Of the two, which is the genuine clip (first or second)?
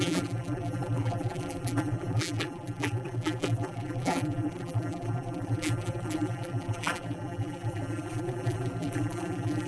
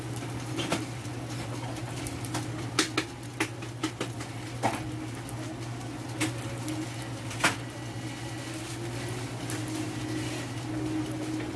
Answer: second